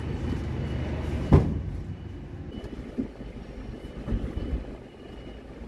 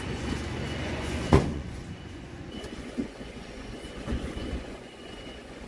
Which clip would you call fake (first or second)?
second